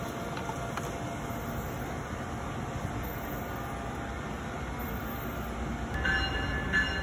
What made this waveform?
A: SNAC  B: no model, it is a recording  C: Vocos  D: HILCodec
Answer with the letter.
B